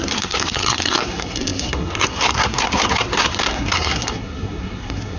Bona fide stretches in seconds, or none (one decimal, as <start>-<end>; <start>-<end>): none